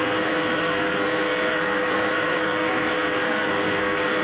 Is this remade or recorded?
remade